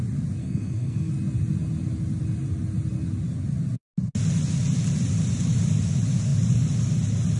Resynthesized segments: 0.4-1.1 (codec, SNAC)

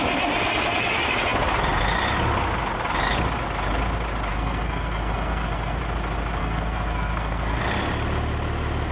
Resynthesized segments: 4.3-5.8 (codec, SNAC); 6.4-7.6

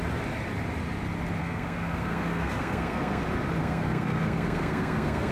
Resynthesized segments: 1.4-3.2 (codec, SNAC); 3.6-5.3

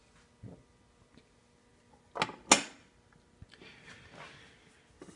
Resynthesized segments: none

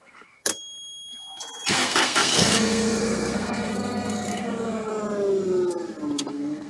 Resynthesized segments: 0.0-0.5 (codec, SNAC); 1.7-4.9; 6.3-6.7

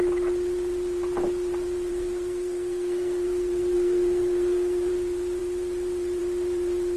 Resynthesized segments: 1.9-4.9 (codec, SNAC)

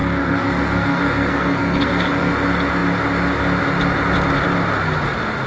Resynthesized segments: 0.0-2.3 (codec, SNAC)

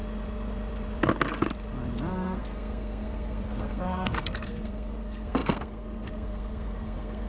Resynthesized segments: 2.1-7.3 (codec, SNAC)